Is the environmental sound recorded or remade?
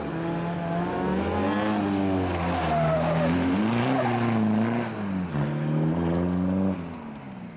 recorded